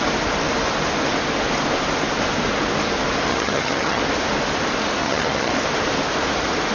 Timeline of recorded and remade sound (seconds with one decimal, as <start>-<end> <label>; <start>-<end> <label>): 0.0-3.3 recorded; 3.3-4.0 remade; 4.0-5.0 recorded; 5.0-5.5 remade; 5.5-6.7 recorded